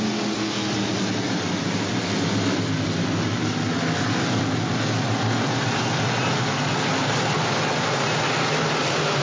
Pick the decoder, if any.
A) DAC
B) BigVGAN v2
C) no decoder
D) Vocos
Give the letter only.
C